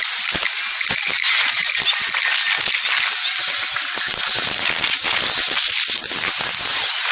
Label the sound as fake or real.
real